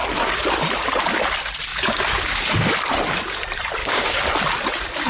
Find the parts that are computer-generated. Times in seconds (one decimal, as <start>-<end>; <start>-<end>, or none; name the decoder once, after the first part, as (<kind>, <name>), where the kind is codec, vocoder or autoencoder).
1.7-2.6 (codec, DAC); 3.8-4.3